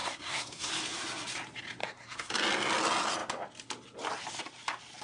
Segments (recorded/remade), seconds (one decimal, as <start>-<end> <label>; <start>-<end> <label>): 0.0-0.7 remade; 0.7-1.8 recorded; 1.8-2.3 remade; 2.3-5.0 recorded